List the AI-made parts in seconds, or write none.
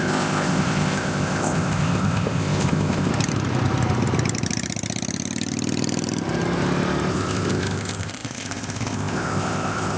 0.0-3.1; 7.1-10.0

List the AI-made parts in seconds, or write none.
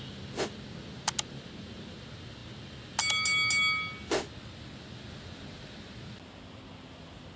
none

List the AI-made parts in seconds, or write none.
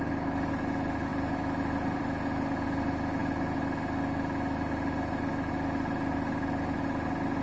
none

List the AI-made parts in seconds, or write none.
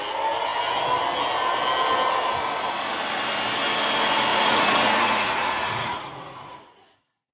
4.3-7.3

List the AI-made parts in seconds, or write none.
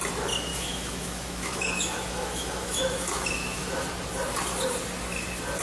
0.5-3.9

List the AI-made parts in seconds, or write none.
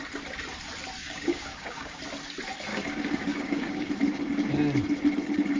1.0-2.0; 2.7-3.9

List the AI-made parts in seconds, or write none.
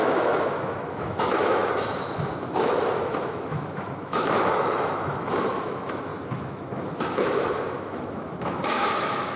0.0-9.4